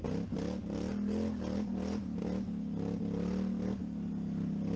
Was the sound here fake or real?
real